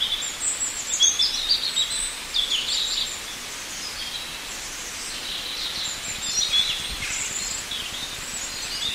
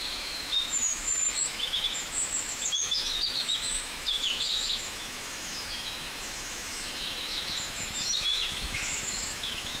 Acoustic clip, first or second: first